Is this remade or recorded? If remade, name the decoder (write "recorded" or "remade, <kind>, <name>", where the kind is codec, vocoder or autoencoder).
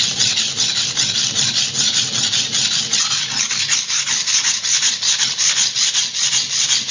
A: recorded